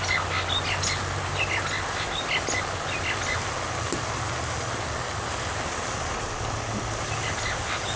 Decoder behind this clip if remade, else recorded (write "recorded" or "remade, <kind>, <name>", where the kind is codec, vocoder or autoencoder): recorded